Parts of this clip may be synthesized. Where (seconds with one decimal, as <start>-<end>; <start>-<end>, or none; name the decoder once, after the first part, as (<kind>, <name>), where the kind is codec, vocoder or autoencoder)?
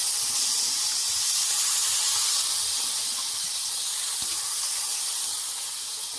none